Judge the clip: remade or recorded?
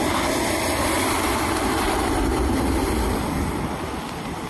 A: recorded